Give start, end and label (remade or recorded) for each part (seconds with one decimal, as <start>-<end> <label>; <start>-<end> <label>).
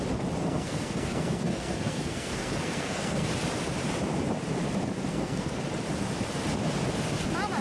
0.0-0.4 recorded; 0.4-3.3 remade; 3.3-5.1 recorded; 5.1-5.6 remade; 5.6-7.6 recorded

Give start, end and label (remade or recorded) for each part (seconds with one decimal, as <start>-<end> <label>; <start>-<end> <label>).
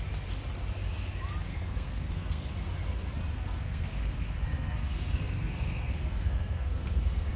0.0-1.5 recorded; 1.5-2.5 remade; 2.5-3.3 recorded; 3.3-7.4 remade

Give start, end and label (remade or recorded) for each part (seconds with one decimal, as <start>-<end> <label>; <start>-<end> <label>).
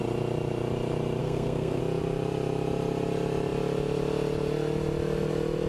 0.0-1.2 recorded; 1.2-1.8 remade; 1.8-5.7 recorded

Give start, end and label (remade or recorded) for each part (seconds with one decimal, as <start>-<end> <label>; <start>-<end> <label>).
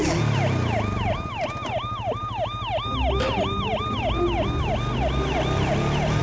0.0-6.2 recorded